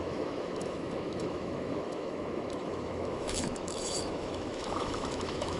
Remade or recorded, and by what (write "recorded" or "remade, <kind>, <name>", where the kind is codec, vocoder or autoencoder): remade, autoencoder, DAC-VAE